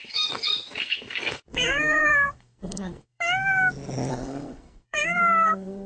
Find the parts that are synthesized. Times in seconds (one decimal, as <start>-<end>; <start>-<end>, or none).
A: 0.0-3.6; 4.1-5.9